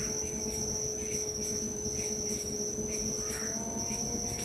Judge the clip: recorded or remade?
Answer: recorded